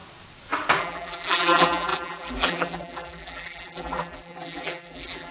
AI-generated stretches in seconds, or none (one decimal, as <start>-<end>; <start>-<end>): 0.8-5.3